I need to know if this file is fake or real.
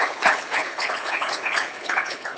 fake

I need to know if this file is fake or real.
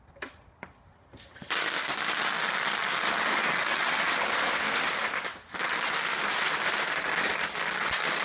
real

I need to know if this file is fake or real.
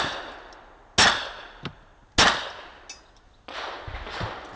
real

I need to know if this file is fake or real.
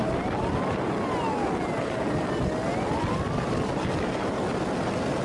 real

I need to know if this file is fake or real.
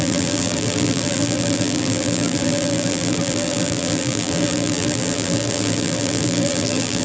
fake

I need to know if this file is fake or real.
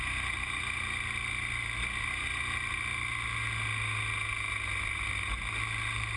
real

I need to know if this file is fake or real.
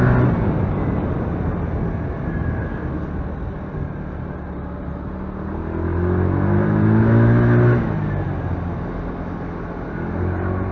real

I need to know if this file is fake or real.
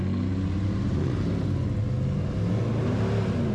real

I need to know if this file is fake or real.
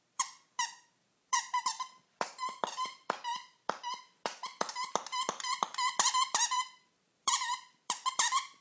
fake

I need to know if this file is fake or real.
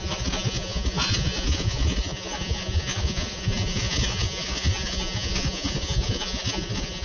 fake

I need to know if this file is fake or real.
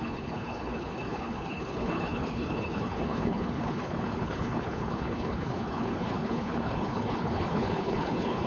fake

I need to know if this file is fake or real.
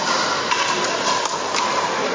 real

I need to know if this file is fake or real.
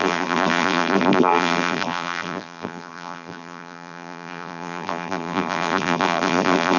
fake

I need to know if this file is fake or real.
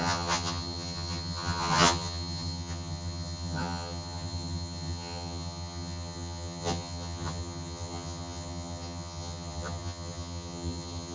fake